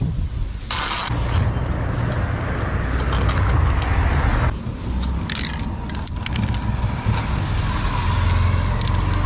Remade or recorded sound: recorded